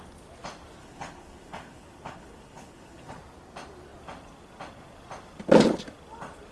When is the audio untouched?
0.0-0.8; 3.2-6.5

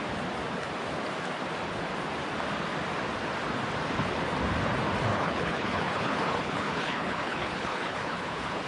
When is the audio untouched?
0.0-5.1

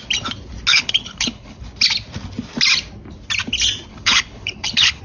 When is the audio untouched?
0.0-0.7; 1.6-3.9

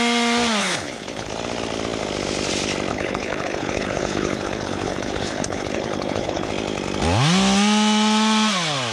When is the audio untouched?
0.0-0.6; 1.3-2.9; 6.5-8.9

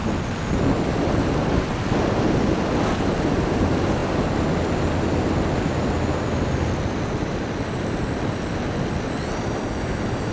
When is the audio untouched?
0.0-10.3

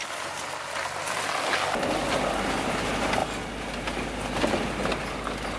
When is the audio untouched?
0.0-5.6